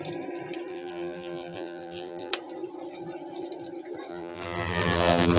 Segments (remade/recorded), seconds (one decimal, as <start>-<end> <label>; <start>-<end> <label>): 0.0-0.7 recorded; 0.7-2.3 remade; 2.3-4.1 recorded; 4.1-5.4 remade